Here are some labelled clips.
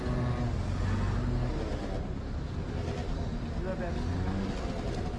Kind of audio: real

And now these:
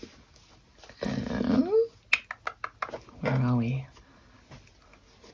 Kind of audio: real